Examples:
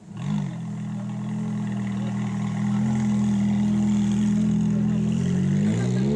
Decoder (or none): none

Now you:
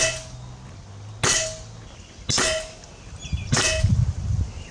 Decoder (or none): none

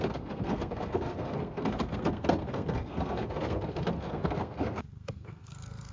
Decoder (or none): codec, SNAC